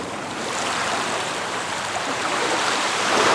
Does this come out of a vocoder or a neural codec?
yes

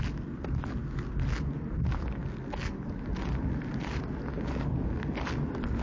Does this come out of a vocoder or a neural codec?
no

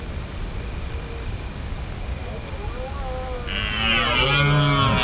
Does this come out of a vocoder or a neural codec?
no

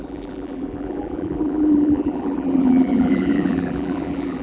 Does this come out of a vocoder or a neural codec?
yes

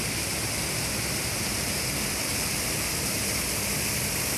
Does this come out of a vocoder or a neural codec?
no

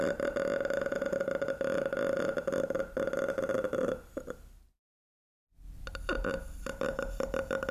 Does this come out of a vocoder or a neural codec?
no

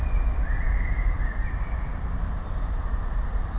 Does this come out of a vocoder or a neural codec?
no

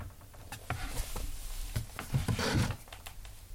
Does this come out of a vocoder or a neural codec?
yes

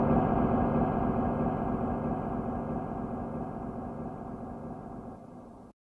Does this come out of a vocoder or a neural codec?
no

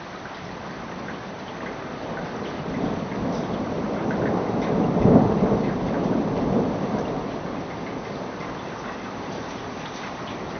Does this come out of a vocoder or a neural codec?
yes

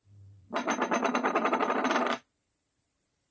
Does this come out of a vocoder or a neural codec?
yes